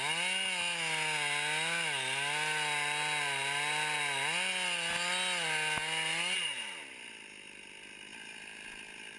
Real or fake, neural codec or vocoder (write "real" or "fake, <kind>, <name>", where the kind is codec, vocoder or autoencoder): real